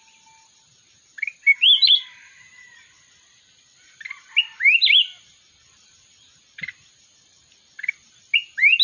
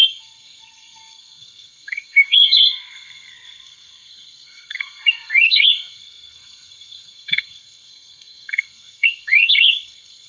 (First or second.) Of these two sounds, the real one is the first